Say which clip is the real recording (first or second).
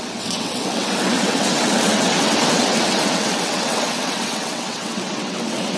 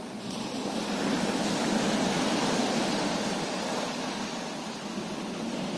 second